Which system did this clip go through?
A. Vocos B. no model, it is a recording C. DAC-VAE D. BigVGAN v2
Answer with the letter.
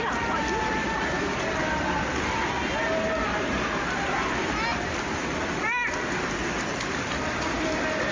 B